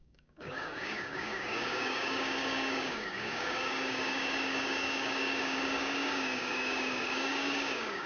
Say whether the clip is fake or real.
fake